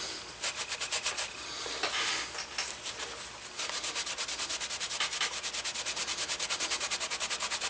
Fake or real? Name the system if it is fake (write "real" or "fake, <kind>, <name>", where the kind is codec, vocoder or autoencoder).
real